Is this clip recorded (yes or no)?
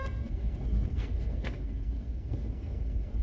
no